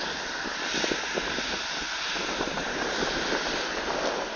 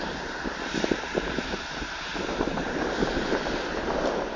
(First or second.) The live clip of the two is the first